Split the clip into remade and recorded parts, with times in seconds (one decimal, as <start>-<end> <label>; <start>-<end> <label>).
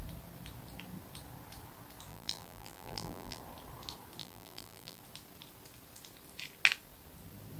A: 0.0-2.1 recorded; 2.1-3.4 remade; 3.4-4.2 recorded; 4.2-5.0 remade; 5.0-7.6 recorded